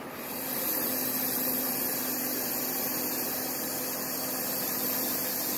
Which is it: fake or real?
real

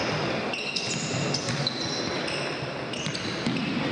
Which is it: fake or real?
real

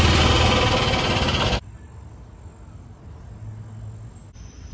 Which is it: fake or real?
real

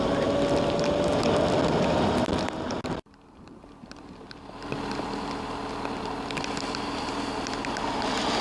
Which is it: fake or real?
real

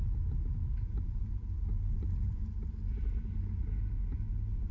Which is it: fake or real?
real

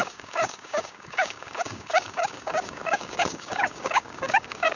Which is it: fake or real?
fake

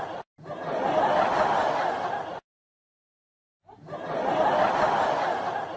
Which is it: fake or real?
real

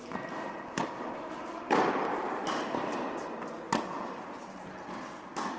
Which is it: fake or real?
real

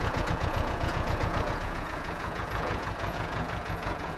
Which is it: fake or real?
fake